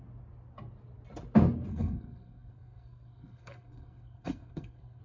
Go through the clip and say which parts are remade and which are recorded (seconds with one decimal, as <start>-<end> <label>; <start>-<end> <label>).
0.0-1.7 recorded; 1.7-5.0 remade